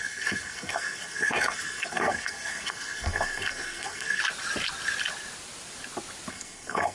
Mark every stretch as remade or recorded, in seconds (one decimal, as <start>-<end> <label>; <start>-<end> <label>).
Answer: 0.0-4.2 remade; 4.2-6.3 recorded; 6.3-6.9 remade